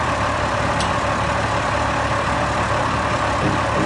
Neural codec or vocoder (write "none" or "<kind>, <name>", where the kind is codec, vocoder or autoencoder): vocoder, BigVGAN v2